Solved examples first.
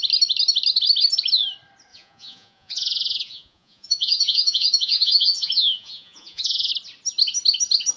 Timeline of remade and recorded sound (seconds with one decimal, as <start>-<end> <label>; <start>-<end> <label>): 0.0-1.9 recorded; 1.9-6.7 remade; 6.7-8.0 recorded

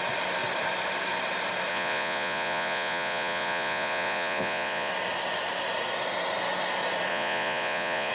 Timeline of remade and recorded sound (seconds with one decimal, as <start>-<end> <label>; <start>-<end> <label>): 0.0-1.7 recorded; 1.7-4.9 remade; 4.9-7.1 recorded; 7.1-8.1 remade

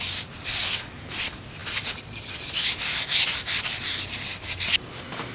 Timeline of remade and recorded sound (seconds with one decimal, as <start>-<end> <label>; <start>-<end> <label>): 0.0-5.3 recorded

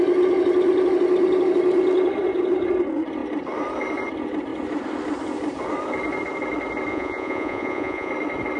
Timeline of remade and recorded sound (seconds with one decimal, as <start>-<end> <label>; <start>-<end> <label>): 0.0-6.9 recorded; 6.9-8.1 remade; 8.1-8.6 recorded